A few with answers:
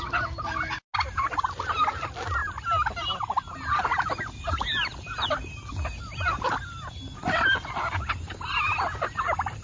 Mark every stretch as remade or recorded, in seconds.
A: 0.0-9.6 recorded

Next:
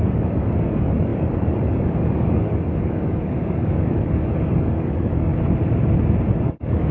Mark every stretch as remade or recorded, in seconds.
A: 0.0-5.3 remade; 5.3-6.4 recorded; 6.4-6.9 remade

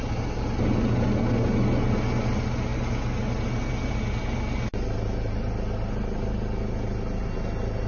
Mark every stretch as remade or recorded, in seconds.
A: 0.0-7.9 recorded

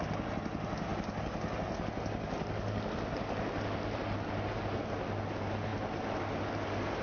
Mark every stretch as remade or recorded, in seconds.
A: 0.0-7.0 recorded